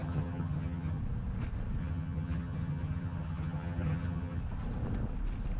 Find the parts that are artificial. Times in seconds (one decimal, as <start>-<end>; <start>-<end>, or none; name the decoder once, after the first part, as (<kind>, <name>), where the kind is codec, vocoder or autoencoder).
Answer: 0.0-1.0 (vocoder, HiFi-GAN); 1.8-4.4